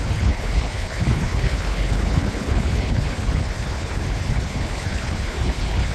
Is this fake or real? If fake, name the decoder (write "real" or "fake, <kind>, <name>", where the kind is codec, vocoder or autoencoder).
fake, codec, HILCodec